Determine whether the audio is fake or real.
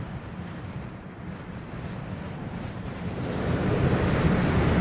real